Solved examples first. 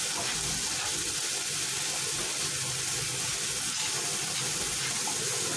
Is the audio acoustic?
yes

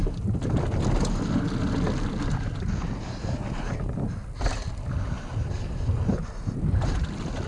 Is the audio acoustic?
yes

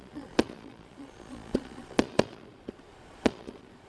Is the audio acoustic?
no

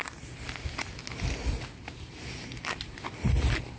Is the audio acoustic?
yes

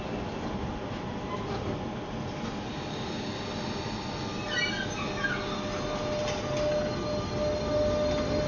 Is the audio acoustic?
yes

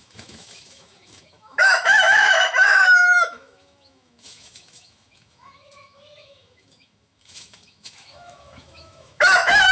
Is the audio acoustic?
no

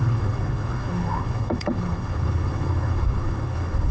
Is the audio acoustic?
no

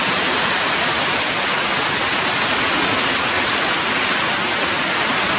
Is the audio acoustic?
yes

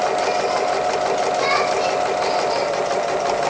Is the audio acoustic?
yes